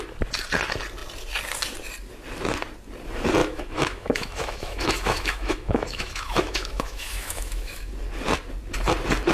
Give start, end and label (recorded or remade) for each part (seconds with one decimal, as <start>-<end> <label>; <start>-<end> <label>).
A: 0.0-3.4 recorded; 3.4-7.9 remade; 7.9-9.3 recorded